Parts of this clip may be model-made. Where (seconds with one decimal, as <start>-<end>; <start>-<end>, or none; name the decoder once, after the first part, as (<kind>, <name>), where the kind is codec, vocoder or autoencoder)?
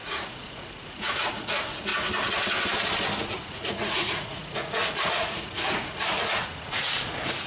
0.0-1.9 (vocoder, Vocos); 3.2-7.5